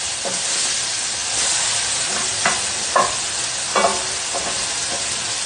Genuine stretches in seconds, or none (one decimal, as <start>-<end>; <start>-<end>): 0.0-5.5